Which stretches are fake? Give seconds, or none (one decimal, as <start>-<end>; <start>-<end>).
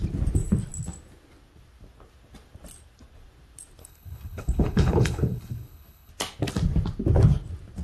3.8-6.1